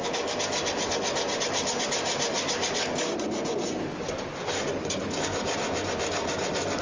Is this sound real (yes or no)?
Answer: yes